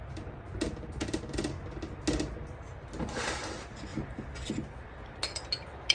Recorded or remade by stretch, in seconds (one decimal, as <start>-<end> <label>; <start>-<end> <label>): 0.0-5.9 recorded

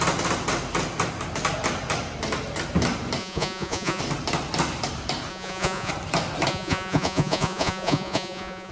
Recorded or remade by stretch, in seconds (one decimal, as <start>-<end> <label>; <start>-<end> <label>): 0.0-3.2 recorded; 3.2-4.0 remade; 4.0-5.3 recorded; 5.3-5.9 remade; 5.9-6.5 recorded; 6.5-8.7 remade

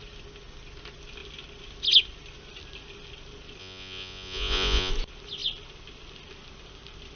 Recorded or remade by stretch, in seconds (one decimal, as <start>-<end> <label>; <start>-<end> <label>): 0.0-3.6 recorded; 3.6-4.9 remade; 4.9-7.2 recorded

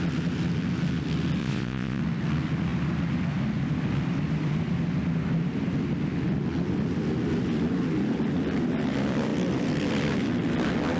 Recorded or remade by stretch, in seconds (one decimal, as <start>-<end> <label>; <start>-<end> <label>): 0.0-1.4 recorded; 1.4-2.0 remade; 2.0-11.0 recorded

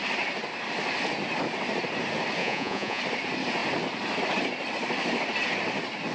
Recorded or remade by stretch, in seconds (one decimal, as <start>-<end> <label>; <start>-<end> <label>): 0.0-2.4 recorded; 2.4-3.0 remade; 3.0-6.1 recorded

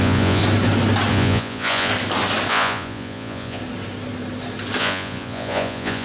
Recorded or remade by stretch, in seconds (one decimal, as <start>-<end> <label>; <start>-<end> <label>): 0.0-0.4 remade; 0.4-1.1 recorded; 1.1-1.9 remade; 1.9-2.5 recorded; 2.5-3.6 remade; 3.6-4.8 recorded; 4.8-6.0 remade

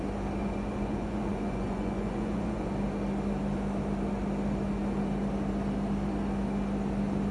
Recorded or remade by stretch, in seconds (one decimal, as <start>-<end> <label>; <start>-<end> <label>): 0.0-0.4 recorded; 0.4-2.7 remade; 2.7-7.3 recorded